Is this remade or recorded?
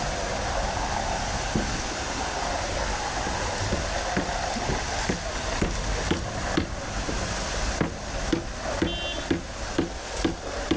recorded